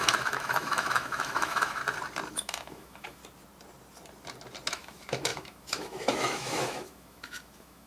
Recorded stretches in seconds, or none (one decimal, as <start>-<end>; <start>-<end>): 1.8-2.3; 3.2-4.7